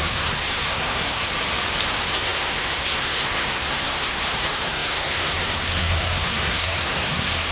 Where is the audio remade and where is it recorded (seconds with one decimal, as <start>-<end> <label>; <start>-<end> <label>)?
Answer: 0.0-1.3 remade; 1.3-1.9 recorded; 1.9-7.5 remade